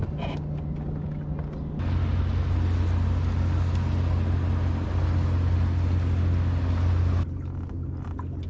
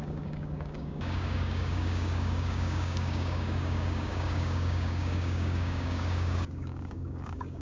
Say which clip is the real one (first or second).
first